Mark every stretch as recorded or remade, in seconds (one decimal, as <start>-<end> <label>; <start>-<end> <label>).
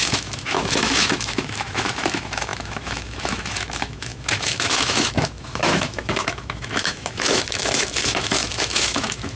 0.0-9.4 remade